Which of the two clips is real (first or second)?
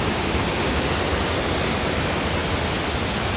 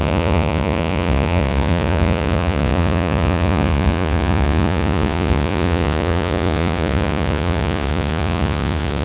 first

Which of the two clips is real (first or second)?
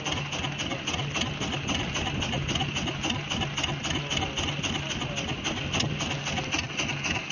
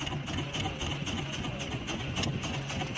first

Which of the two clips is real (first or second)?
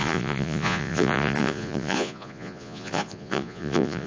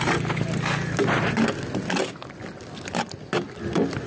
second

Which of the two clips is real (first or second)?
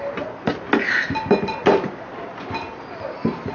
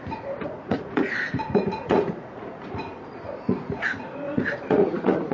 first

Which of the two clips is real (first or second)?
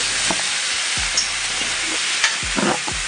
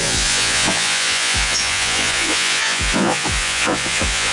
first